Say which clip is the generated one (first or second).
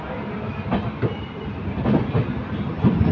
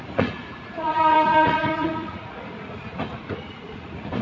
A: second